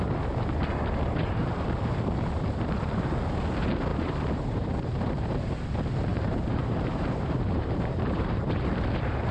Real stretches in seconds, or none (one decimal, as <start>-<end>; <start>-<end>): 0.0-3.9; 5.6-6.1; 8.5-9.3